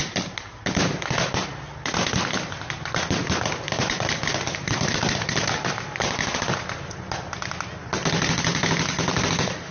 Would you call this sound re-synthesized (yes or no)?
no